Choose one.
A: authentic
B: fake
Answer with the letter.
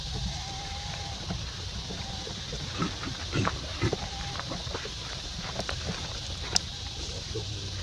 B